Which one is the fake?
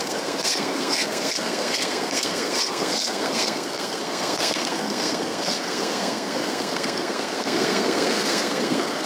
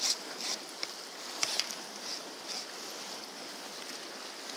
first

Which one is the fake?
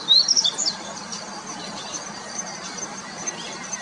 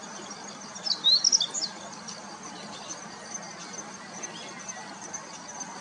first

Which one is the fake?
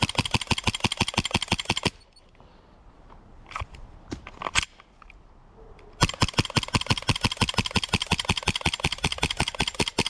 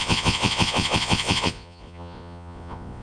second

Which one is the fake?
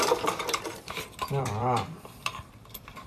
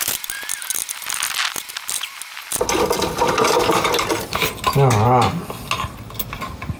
first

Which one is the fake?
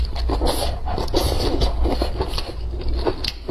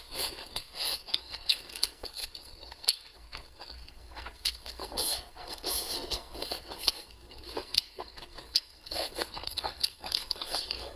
second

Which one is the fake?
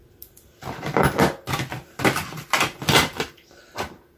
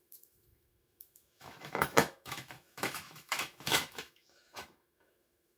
second